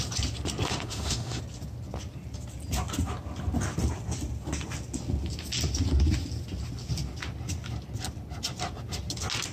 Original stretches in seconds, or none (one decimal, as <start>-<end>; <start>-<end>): 0.0-0.7; 1.4-9.5